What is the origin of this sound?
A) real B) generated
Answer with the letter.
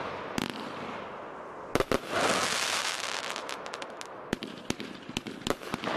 A